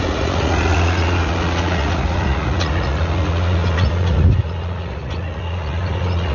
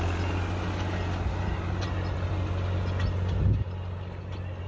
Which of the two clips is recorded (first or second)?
second